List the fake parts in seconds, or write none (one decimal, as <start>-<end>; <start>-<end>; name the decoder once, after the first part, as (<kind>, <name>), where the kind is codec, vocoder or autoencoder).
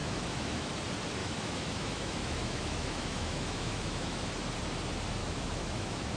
0.0-0.7 (autoencoder, DAC-VAE); 1.2-4.3; 5.2-6.2